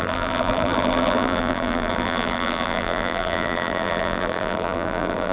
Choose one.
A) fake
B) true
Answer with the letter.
A